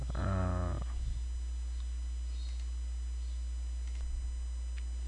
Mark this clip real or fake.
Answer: real